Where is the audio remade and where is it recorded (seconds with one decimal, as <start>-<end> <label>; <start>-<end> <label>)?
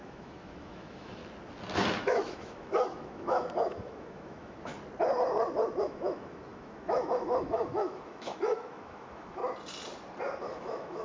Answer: 0.0-1.2 remade; 1.2-2.0 recorded; 2.0-4.7 remade; 4.7-5.8 recorded; 5.8-9.4 remade; 9.4-10.4 recorded; 10.4-11.0 remade